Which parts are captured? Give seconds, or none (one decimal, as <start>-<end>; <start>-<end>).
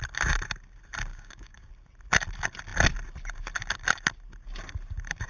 0.0-1.1; 1.7-5.3